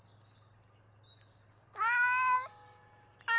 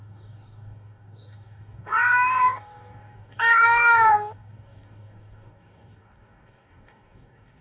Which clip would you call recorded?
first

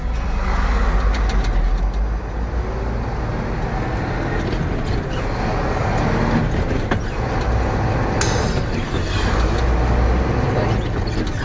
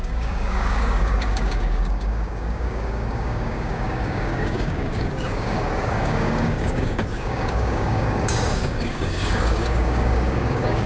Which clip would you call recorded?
first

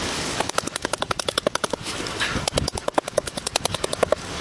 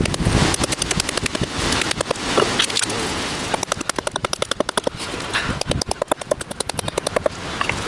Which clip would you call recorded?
second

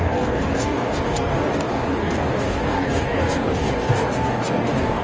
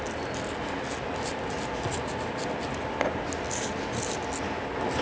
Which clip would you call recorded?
second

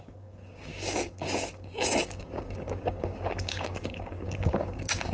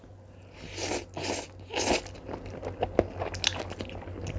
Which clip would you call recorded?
second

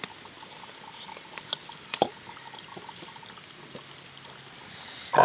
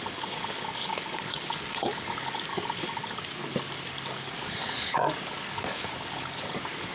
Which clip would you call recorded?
first